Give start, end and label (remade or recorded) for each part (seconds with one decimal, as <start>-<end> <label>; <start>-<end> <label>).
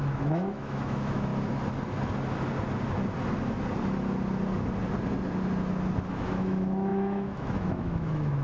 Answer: 0.0-1.3 remade; 1.3-6.1 recorded; 6.1-8.4 remade